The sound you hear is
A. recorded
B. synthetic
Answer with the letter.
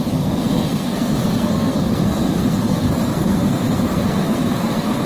B